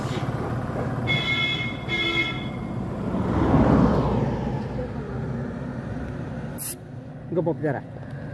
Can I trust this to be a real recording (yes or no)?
yes